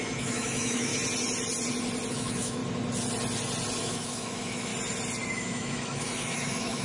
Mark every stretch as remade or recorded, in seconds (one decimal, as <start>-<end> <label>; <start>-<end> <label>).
0.0-0.9 remade; 0.9-2.1 recorded; 2.1-2.6 remade; 2.6-3.8 recorded; 3.8-4.7 remade; 4.7-5.3 recorded; 5.3-6.8 remade